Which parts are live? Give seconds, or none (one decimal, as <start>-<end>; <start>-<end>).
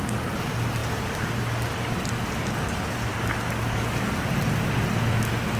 0.0-3.1; 4.1-5.6